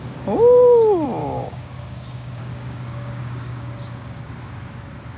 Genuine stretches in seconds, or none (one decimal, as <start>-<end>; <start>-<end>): 0.0-1.2; 4.3-5.2